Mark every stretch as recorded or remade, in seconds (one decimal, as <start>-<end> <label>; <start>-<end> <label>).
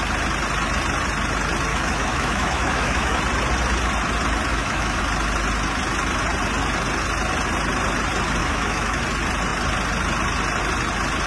0.0-1.7 recorded; 1.7-3.2 remade; 3.2-4.5 recorded; 4.5-5.0 remade; 5.0-8.4 recorded; 8.4-9.0 remade; 9.0-11.3 recorded